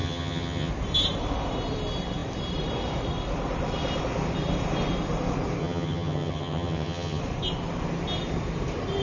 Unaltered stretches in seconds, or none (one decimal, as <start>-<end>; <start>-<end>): 0.7-5.6; 7.2-9.0